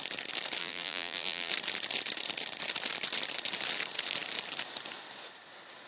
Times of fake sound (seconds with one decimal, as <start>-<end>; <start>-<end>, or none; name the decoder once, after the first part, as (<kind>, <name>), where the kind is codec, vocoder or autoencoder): 0.6-1.5 (vocoder, BigVGAN v2)